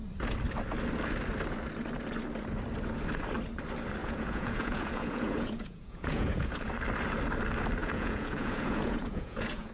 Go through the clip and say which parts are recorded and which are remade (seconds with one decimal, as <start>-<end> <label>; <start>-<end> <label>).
0.0-4.0 recorded; 4.0-6.7 remade; 6.7-7.8 recorded; 7.8-9.7 remade